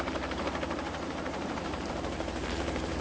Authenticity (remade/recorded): remade